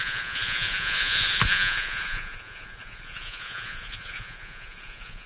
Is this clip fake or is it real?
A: fake